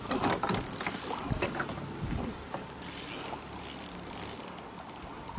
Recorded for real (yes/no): yes